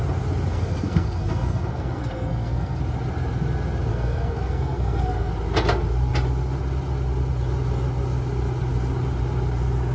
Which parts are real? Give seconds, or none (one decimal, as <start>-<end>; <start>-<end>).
0.0-0.5; 2.8-3.9; 5.3-9.9